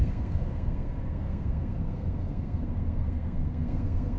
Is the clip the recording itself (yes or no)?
no